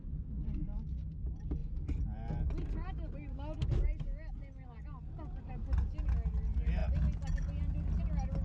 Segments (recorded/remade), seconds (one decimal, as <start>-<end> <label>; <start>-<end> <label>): 0.0-8.4 recorded